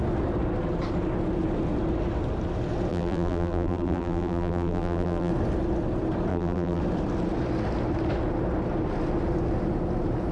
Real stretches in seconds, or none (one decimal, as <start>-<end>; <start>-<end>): 0.0-2.9; 5.3-6.3; 6.8-10.3